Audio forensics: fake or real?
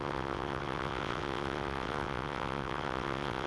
fake